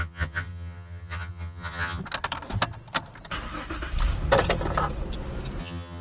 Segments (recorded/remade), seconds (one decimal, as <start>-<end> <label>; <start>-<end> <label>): 0.0-2.0 remade; 2.0-5.6 recorded; 5.6-6.0 remade